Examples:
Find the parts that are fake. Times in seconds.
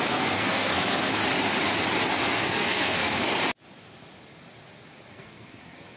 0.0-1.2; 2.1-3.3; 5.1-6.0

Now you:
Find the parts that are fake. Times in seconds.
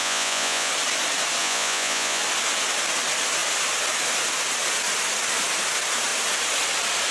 0.0-0.7; 1.4-2.2